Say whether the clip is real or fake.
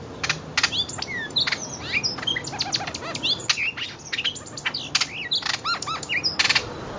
real